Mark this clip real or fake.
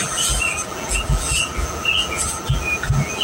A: fake